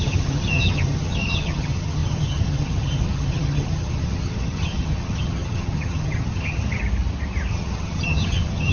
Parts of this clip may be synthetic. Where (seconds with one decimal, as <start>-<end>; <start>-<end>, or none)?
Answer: 0.0-6.8; 7.5-8.7